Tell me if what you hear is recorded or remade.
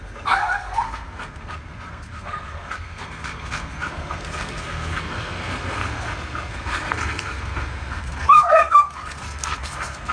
remade